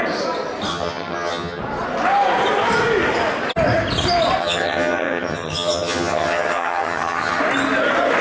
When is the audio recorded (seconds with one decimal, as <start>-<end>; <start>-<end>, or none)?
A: 0.0-0.7; 1.6-4.4; 7.4-8.2

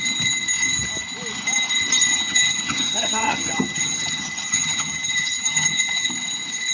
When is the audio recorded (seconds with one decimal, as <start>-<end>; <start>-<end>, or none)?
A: 0.0-2.1; 6.1-6.7

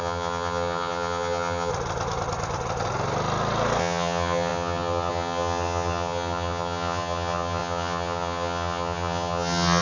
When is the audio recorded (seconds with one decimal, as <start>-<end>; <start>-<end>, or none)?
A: 1.7-3.8

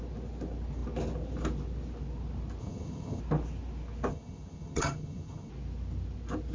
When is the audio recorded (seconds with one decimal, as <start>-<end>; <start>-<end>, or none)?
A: 0.0-2.6; 3.2-4.1; 5.5-6.5